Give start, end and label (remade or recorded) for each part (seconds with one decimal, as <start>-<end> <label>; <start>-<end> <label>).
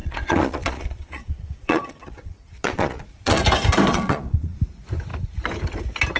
0.0-3.4 remade; 3.4-3.9 recorded; 3.9-4.6 remade; 4.6-6.2 recorded